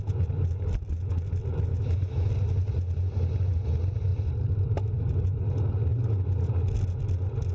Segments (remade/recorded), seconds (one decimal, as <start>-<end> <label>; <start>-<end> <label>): 0.0-1.7 recorded; 1.7-2.3 remade; 2.3-7.5 recorded